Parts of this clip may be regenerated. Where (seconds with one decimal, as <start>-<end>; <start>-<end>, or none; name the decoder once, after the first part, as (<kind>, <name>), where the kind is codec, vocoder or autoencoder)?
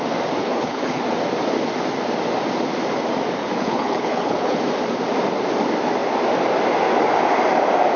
0.4-1.0 (codec, HILCodec); 3.4-4.6